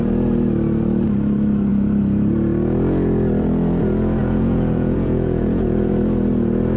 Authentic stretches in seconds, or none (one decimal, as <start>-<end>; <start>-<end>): 0.0-4.2; 5.9-6.8